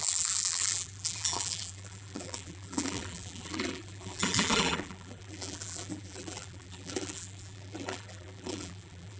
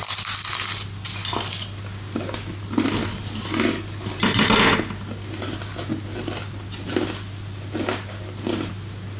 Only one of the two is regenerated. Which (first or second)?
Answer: first